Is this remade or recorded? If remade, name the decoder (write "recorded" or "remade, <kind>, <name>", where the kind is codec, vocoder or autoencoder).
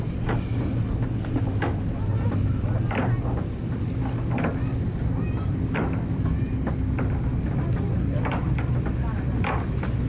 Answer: recorded